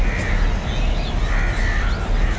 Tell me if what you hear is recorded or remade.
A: recorded